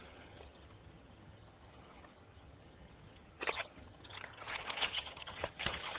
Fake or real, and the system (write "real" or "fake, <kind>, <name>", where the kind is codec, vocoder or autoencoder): fake, vocoder, HiFi-GAN